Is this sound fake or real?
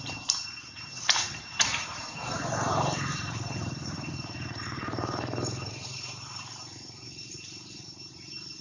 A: fake